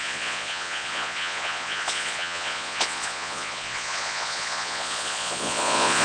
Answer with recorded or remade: remade